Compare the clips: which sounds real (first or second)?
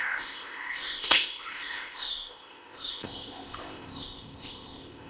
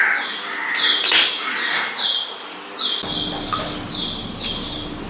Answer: second